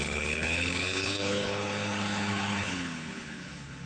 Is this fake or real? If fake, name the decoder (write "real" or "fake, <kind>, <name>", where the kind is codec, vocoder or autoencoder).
fake, codec, HILCodec